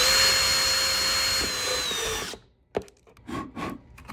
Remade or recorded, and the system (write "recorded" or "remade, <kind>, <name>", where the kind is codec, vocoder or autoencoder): recorded